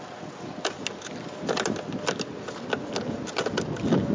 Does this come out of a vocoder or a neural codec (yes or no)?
no